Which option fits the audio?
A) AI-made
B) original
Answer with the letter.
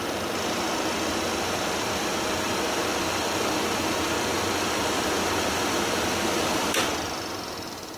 B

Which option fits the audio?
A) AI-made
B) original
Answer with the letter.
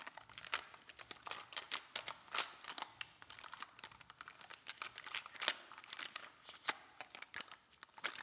B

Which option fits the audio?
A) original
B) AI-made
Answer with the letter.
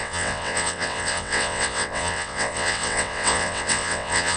B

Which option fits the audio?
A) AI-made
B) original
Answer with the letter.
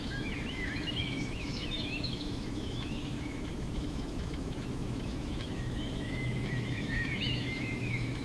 A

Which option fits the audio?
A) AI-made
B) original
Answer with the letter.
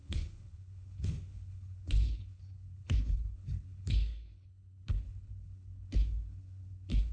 A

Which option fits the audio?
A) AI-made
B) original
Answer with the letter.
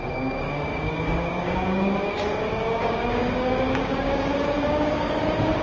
A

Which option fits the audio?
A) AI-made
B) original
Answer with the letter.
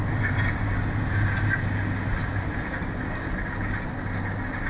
B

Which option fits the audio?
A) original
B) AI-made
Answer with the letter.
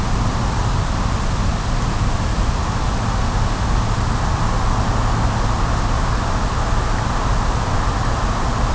A